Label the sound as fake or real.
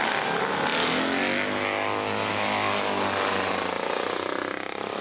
real